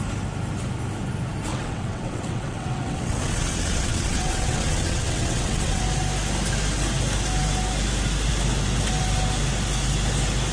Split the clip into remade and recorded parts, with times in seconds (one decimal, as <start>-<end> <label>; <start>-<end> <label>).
0.0-1.5 recorded; 1.5-5.8 remade; 5.8-10.5 recorded